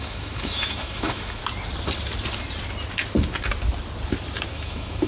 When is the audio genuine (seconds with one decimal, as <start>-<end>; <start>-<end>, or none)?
1.4-4.5